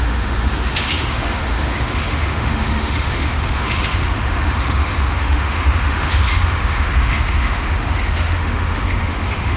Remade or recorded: remade